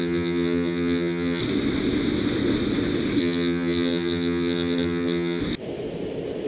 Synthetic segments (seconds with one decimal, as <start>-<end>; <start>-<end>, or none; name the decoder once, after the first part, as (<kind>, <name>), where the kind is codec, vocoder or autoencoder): 0.0-1.4 (vocoder, HiFi-GAN); 3.2-5.4